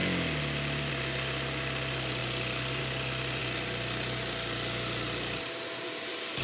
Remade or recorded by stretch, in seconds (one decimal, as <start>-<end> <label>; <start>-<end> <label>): 0.0-6.4 recorded